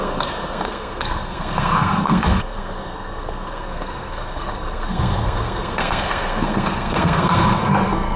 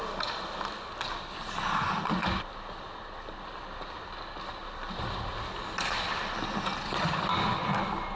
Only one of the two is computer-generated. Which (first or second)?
first